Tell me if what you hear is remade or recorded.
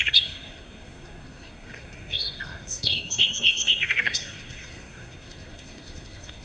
remade